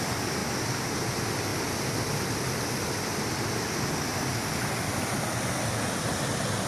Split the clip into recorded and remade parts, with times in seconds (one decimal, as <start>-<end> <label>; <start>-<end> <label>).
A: 0.0-6.7 recorded